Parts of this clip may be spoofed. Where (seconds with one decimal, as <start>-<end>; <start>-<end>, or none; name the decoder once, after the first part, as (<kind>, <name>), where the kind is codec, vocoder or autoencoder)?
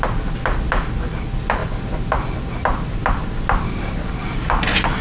none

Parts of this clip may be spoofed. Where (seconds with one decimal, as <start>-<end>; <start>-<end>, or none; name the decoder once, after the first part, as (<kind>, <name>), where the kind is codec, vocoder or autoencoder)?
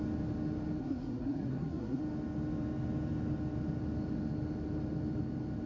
0.8-2.0 (codec, SNAC)